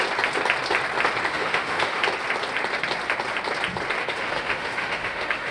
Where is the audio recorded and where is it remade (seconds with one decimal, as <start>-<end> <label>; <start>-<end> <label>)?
0.0-1.3 recorded; 1.3-2.0 remade; 2.0-4.0 recorded; 4.0-5.5 remade